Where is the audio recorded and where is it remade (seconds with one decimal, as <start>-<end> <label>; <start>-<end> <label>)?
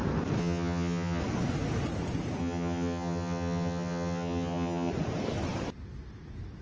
0.0-0.4 recorded; 0.4-1.2 remade; 1.2-2.4 recorded; 2.4-4.9 remade; 4.9-6.6 recorded